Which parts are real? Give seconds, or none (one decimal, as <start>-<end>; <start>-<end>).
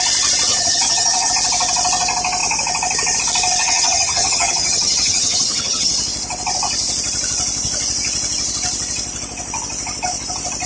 0.0-0.5; 1.3-3.6; 5.9-10.7